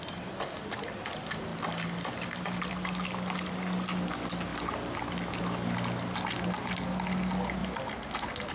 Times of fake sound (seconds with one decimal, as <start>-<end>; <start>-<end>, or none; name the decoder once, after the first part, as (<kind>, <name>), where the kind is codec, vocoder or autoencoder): none